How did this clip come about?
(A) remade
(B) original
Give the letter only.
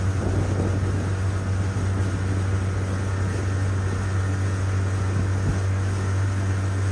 B